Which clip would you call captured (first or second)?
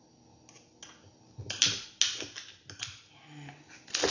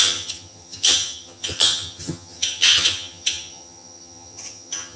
first